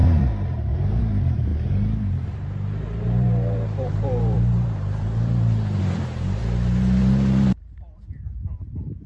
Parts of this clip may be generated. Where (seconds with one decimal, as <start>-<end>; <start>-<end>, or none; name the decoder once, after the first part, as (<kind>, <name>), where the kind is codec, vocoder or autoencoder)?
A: 0.0-9.1 (vocoder, BigVGAN v2)